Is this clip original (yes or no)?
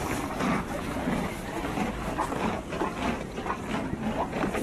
no